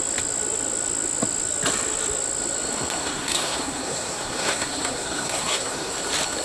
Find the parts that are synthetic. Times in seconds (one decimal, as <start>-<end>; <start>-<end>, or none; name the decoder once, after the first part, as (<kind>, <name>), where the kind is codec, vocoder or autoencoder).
3.0-5.9 (codec, SNAC)

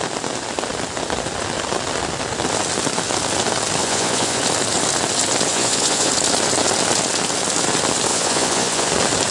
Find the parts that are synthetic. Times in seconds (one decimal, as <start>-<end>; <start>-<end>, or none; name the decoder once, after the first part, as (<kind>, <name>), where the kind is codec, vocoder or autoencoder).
3.8-4.4 (vocoder, Vocos); 5.5-6.1; 8.1-8.9

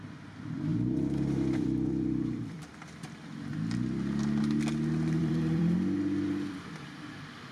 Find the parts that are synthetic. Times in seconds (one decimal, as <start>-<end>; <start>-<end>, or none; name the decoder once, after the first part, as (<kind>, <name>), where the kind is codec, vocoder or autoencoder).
0.7-2.7 (vocoder, BigVGAN v2); 5.2-7.1

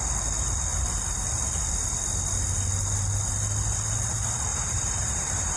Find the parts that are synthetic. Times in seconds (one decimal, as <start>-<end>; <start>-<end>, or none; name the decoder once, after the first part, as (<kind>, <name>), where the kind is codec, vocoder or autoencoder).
4.5-5.6 (vocoder, BigVGAN v2)